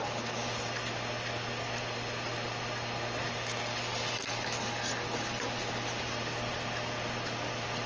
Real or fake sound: real